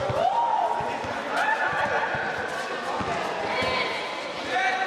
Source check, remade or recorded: recorded